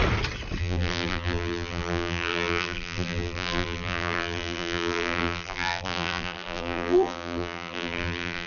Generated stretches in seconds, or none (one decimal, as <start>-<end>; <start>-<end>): 0.6-8.5